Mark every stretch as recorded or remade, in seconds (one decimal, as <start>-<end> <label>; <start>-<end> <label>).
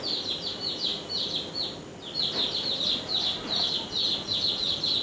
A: 0.0-5.0 recorded